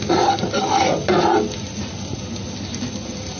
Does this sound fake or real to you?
real